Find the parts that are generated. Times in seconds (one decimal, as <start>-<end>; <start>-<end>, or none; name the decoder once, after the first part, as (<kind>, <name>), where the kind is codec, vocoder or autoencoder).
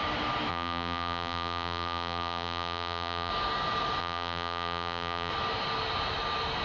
0.5-3.3 (vocoder, BigVGAN v2); 4.0-5.3